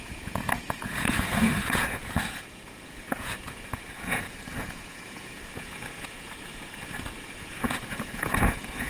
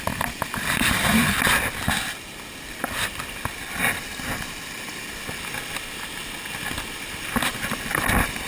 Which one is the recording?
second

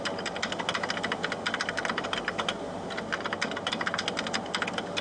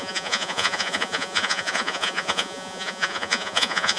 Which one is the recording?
first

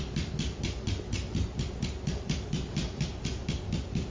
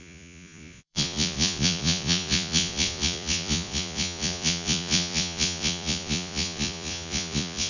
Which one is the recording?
first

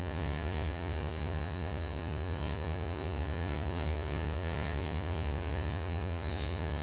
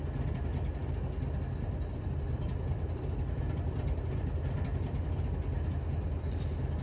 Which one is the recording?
second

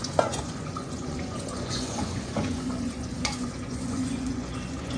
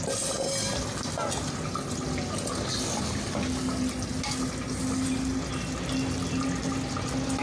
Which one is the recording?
second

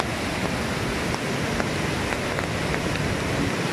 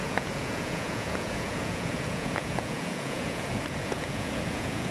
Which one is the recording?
first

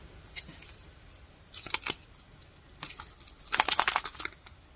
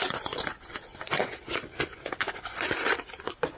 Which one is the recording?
first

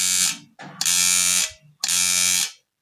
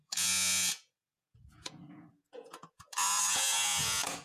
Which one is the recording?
first